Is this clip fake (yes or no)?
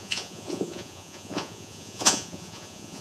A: yes